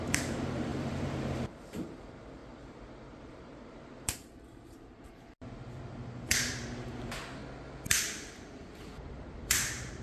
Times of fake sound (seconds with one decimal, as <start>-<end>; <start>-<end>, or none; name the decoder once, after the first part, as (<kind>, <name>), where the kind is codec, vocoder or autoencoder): 0.0-7.4 (vocoder, BigVGAN v2); 8.0-10.0